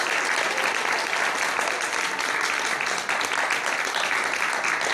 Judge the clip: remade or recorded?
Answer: recorded